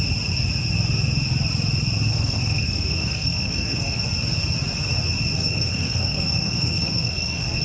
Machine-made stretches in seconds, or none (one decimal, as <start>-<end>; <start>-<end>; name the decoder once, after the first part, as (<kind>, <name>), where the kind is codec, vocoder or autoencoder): 2.1-4.0 (codec, SNAC); 5.4-7.6